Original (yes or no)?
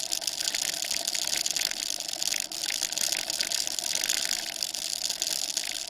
yes